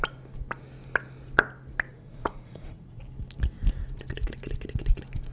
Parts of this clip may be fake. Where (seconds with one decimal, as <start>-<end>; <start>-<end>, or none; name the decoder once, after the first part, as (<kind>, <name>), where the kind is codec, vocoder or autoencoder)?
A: 1.9-3.0 (vocoder, Vocos)